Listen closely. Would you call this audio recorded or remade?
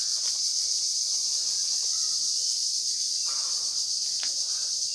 remade